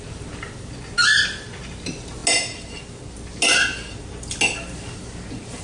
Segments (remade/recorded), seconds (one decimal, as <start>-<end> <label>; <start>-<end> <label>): 0.0-5.6 recorded